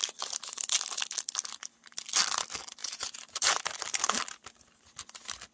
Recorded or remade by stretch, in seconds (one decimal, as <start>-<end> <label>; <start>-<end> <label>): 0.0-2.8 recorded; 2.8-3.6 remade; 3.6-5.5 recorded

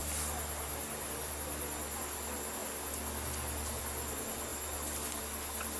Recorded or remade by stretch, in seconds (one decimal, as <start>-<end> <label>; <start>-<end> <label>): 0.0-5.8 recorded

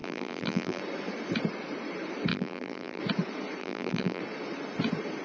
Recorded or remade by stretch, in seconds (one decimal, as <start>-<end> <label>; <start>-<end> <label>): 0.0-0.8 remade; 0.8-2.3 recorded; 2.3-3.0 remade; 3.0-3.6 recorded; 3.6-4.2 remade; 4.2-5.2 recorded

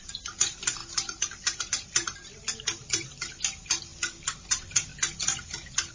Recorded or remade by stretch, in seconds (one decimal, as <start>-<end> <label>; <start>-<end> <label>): 0.0-3.9 remade; 3.9-4.5 recorded; 4.5-4.9 remade; 4.9-5.9 recorded